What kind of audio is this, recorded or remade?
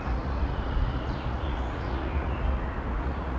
remade